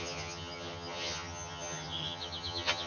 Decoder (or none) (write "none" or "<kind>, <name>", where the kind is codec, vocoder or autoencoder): vocoder, HiFi-GAN